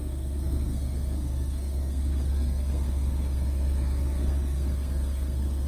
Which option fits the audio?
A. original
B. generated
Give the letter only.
B